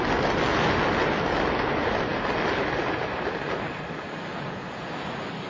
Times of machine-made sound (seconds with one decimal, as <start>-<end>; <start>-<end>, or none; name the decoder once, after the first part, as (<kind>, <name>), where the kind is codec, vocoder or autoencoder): 4.3-4.9 (vocoder, Vocos)

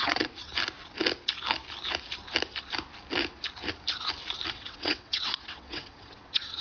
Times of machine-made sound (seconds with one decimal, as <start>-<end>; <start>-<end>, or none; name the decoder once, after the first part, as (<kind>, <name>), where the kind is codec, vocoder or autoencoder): 0.0-0.5 (vocoder, WaveNeXt); 4.5-6.6